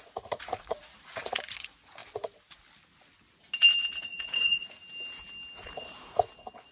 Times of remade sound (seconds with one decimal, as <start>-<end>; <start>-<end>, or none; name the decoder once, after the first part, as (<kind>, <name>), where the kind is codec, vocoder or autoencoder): 0.0-2.0 (vocoder, Vocos); 3.9-4.8; 5.6-6.7